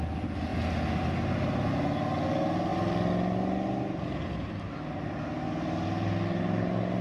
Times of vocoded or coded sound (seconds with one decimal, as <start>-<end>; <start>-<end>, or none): 0.5-1.7